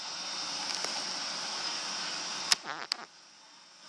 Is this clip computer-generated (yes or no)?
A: no